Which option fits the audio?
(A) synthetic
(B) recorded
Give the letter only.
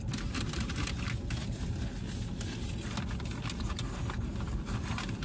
B